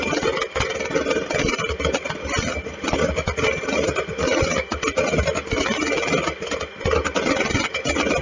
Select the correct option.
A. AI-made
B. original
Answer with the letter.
B